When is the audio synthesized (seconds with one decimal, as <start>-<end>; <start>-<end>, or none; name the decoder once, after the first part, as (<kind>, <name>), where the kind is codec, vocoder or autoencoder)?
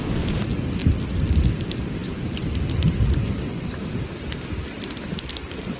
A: none